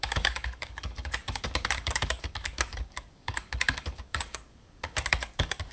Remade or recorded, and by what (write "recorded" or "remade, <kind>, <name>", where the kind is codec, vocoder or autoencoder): remade, codec, DAC